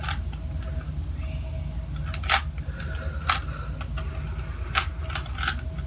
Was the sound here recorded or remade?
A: recorded